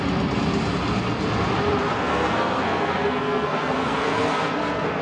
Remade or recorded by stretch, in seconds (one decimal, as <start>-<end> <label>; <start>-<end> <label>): 0.0-1.9 recorded; 1.9-5.0 remade